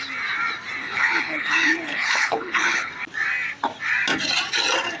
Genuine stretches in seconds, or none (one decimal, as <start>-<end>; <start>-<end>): 0.0-0.8; 2.9-5.0